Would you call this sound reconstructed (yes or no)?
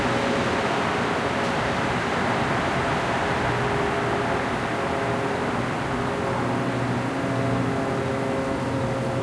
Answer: no